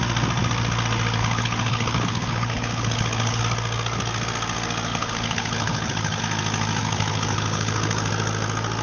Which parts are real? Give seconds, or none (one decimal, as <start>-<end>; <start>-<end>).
0.0-1.2; 3.4-4.9; 6.2-6.8; 8.1-8.8